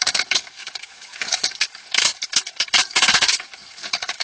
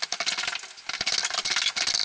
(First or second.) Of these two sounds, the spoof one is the first